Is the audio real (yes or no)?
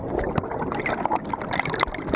yes